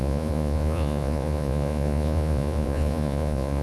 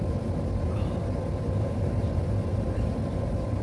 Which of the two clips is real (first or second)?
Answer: second